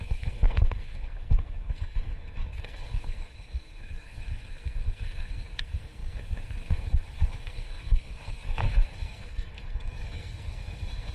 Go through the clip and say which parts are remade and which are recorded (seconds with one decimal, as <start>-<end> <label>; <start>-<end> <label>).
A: 0.0-11.1 remade